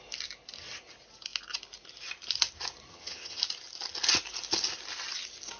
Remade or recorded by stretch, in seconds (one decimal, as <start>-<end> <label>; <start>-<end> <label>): 0.0-2.9 recorded; 2.9-3.4 remade; 3.4-5.6 recorded